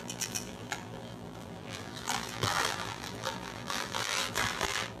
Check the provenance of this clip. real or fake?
fake